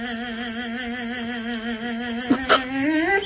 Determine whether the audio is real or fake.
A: real